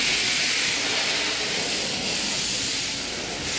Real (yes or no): yes